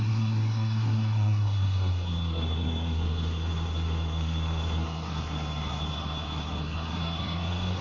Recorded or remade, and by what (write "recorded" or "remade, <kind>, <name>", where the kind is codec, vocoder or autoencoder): remade, codec, SNAC